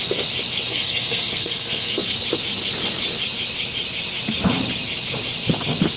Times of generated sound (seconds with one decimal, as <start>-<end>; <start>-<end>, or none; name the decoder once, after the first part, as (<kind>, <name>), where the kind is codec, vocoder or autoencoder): 0.7-2.1 (codec, SNAC)